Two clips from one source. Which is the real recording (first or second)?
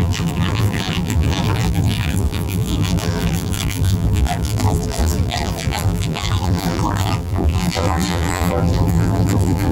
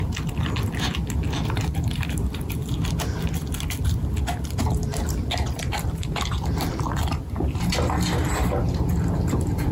second